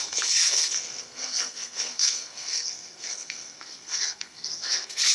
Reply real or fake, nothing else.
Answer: fake